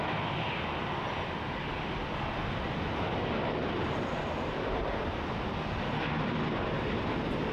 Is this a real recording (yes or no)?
yes